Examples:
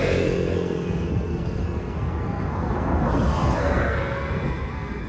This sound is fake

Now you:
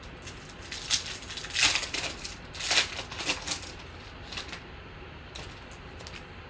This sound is real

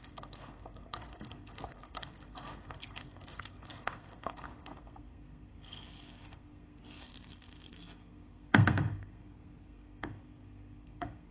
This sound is fake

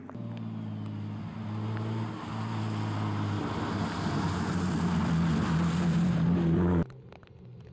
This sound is real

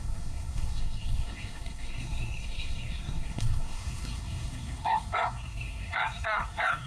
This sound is fake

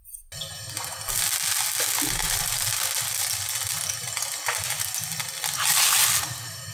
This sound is real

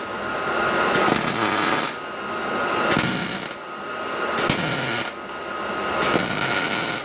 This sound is real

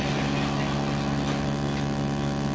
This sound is real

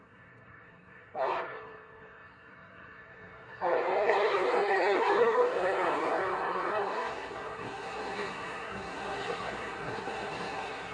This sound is fake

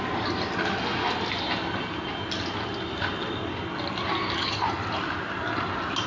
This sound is real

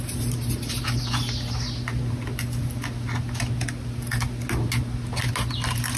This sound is real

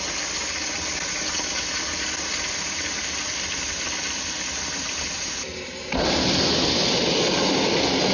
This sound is real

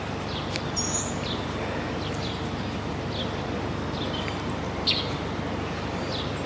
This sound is real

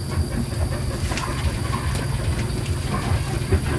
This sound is real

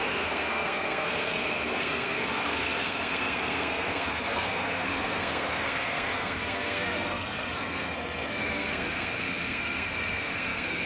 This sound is fake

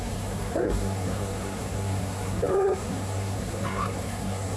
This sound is fake